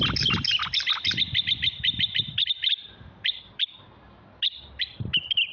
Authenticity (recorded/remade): recorded